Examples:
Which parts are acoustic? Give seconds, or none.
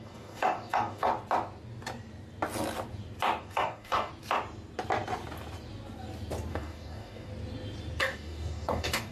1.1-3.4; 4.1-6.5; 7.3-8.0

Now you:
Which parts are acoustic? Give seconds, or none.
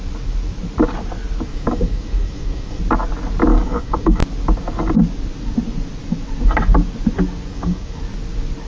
0.0-1.5; 2.8-3.5; 4.2-7.5; 8.0-8.7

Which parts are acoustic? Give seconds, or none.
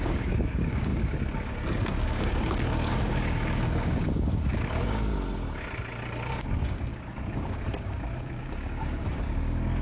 5.1-6.3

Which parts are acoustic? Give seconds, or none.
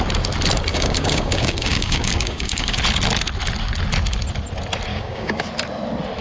0.0-0.7; 2.8-4.9; 5.4-6.2